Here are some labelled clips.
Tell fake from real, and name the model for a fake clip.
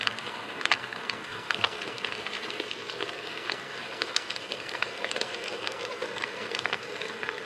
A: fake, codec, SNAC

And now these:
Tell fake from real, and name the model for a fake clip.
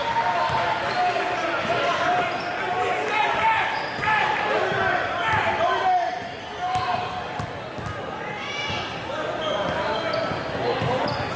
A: real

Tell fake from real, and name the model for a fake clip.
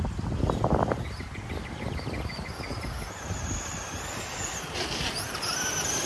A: real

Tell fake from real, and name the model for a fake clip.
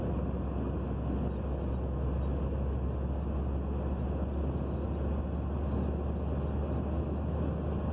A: real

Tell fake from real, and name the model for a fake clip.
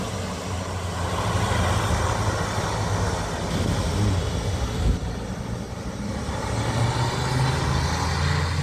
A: real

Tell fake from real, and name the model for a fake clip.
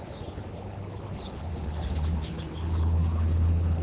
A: fake, codec, HILCodec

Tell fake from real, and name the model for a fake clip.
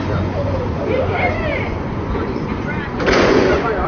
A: fake, vocoder, Vocos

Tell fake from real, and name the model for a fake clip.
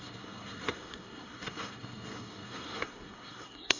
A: fake, codec, SNAC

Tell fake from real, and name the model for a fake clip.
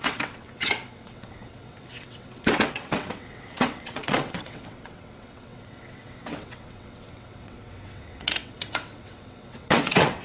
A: fake, vocoder, WaveNeXt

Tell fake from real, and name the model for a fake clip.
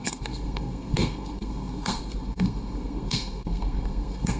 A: fake, codec, SNAC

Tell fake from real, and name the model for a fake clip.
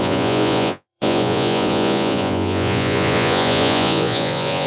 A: fake, vocoder, Vocos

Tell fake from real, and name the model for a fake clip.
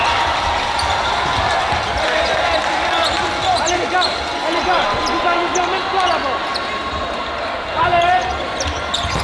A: real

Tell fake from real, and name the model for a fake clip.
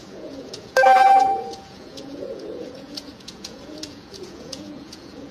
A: fake, vocoder, Vocos